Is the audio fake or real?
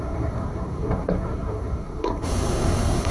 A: fake